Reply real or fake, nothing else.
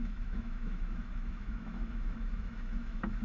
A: fake